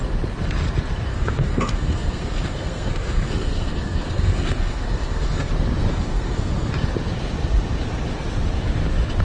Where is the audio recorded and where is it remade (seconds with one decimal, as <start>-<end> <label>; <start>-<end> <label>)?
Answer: 0.0-1.1 recorded; 1.1-5.5 remade; 5.5-5.9 recorded; 5.9-6.7 remade; 6.7-9.2 recorded